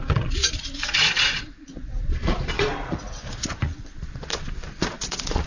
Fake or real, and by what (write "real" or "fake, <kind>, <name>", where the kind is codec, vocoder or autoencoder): fake, vocoder, Vocos